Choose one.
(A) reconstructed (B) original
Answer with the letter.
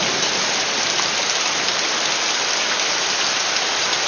B